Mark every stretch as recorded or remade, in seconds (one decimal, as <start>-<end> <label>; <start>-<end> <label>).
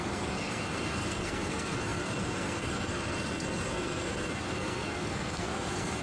0.0-6.0 remade